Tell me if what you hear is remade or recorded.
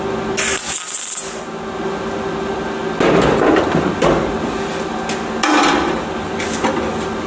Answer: recorded